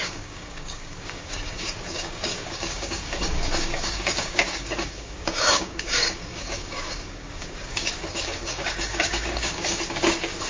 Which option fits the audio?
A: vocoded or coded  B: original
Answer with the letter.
A